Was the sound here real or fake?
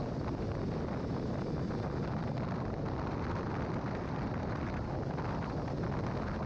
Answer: real